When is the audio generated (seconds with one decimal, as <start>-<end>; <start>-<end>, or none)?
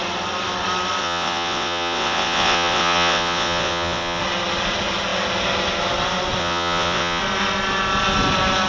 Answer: 1.0-4.2; 6.4-7.2